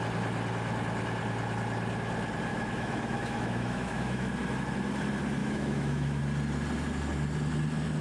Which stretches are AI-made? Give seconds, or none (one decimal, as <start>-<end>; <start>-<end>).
2.5-4.3; 5.4-6.2